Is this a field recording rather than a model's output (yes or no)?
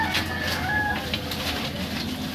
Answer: yes